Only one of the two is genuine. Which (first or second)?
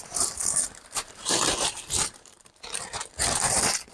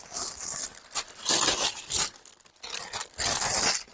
second